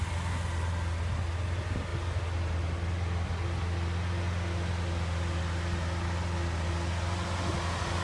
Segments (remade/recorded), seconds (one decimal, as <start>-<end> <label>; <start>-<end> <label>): 0.0-8.0 recorded